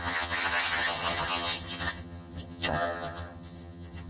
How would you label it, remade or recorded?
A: remade